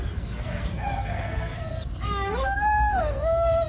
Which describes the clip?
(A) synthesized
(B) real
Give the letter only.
A